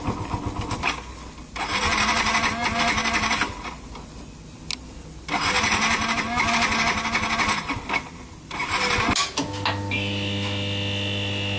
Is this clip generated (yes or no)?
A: no